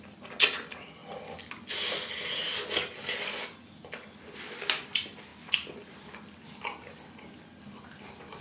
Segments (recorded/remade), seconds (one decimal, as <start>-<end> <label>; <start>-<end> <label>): 0.0-8.4 recorded